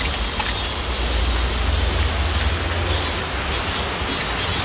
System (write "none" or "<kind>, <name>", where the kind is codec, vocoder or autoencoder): none